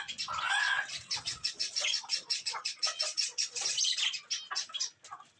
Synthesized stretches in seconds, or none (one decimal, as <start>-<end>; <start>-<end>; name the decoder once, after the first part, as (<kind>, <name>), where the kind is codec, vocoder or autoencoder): 0.9-4.0 (vocoder, Vocos)